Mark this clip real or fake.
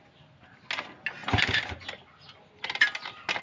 real